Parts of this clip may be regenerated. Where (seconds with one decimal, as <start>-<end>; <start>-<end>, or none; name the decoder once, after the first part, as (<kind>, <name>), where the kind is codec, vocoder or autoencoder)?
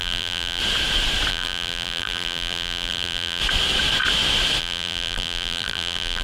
0.0-0.6 (vocoder, BigVGAN v2); 1.3-3.4; 4.6-6.2